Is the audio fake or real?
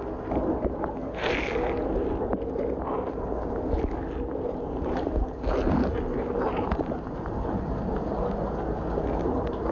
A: real